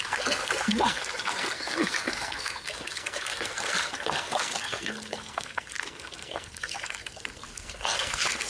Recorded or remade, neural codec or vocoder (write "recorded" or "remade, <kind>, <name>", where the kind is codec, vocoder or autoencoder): remade, codec, SNAC